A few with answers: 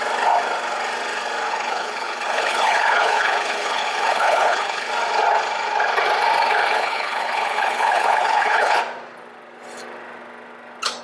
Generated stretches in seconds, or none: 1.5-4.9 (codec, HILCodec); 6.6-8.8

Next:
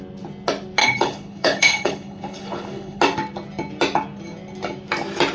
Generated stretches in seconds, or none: 0.8-3.0 (codec, HILCodec)

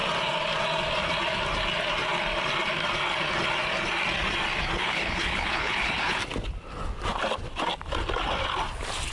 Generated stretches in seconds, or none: 4.8-6.2 (codec, HILCodec)

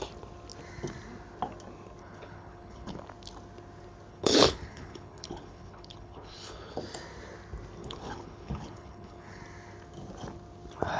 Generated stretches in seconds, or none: 2.0-3.0 (codec, HILCodec); 4.1-6.8; 7.8-9.4